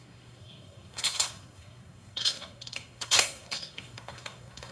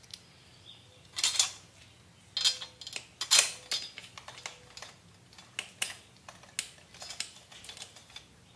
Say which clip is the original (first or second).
second